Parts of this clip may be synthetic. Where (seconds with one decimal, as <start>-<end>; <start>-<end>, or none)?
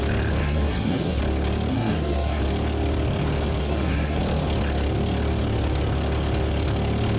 0.4-1.2; 1.7-2.4; 3.6-4.2